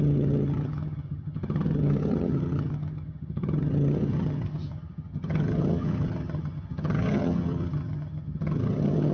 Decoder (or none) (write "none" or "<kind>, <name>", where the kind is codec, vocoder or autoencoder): vocoder, HiFi-GAN